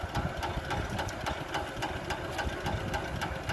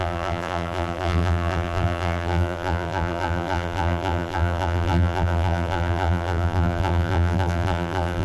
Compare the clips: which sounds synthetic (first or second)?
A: second